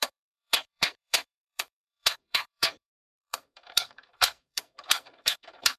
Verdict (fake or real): fake